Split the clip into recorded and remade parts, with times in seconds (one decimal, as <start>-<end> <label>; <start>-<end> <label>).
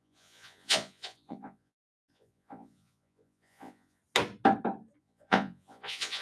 0.0-4.0 remade; 4.0-5.0 recorded; 5.0-6.2 remade